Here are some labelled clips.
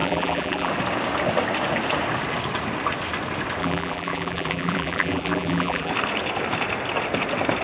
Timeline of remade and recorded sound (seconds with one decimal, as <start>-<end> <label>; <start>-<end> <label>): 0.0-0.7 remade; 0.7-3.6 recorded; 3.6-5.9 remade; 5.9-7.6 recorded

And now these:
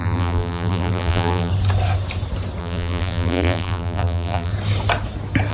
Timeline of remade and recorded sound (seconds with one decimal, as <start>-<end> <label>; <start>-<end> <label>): 0.0-1.5 remade; 1.5-2.6 recorded; 2.6-4.5 remade; 4.5-5.5 recorded

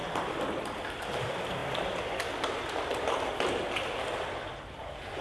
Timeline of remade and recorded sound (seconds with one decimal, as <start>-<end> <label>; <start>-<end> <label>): 0.0-1.1 recorded; 1.1-1.6 remade; 1.6-4.7 recorded; 4.7-5.2 remade

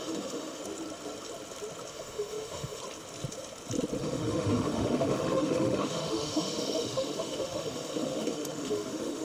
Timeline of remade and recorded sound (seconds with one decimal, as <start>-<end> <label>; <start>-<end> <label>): 0.0-0.6 remade; 0.6-1.9 recorded; 1.9-2.8 remade; 2.8-4.0 recorded; 4.0-9.2 remade